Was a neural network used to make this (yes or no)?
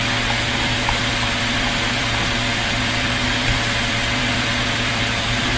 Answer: yes